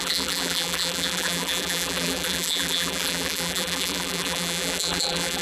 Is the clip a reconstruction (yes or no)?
yes